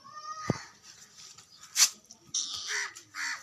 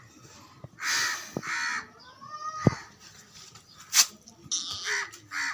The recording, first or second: second